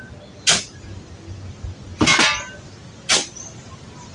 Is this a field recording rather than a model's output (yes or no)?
yes